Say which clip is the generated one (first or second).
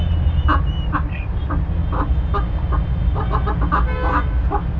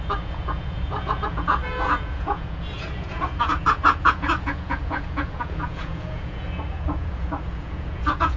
second